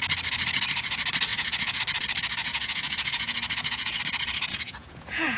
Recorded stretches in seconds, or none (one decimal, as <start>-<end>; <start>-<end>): 0.0-1.3; 1.8-2.5; 4.0-4.5